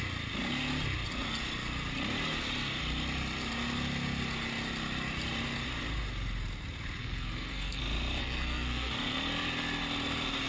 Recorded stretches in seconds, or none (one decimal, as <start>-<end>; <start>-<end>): 0.0-7.0; 7.8-8.2; 8.9-10.5